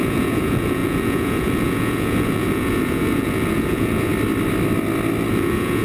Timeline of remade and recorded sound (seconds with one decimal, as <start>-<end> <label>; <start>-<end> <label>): 0.0-4.1 remade; 4.1-5.3 recorded; 5.3-5.8 remade